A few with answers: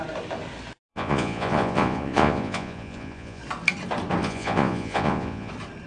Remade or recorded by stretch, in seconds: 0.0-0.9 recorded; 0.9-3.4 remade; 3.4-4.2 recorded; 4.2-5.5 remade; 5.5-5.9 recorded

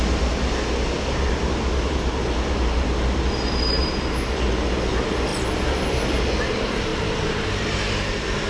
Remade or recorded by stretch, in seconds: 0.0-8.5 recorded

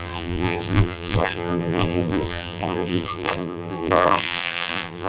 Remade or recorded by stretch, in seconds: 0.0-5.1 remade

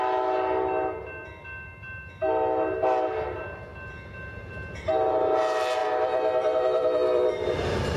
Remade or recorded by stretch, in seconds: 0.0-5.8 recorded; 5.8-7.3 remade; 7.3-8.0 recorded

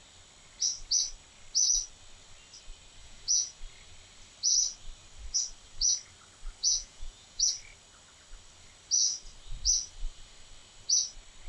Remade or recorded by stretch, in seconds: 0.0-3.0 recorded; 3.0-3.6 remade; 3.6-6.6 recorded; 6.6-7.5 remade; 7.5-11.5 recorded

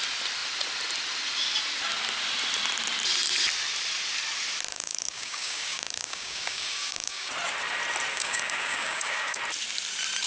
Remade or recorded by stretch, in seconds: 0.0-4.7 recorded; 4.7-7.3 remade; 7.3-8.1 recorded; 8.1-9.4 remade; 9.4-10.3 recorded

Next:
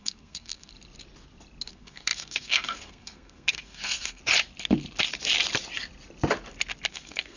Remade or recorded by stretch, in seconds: 0.0-0.7 remade; 0.7-1.7 recorded; 1.7-4.2 remade; 4.2-6.9 recorded; 6.9-7.4 remade

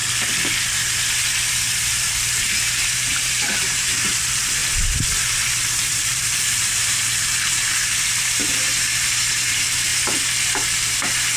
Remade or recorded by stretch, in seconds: 0.0-1.5 recorded; 1.5-4.6 remade; 4.6-5.9 recorded; 5.9-9.9 remade; 9.9-11.4 recorded